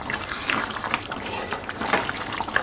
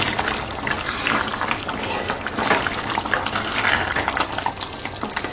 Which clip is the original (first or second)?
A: second